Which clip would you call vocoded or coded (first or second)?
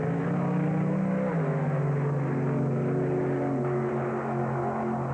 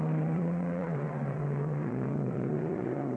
second